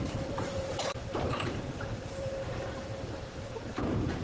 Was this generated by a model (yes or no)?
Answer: yes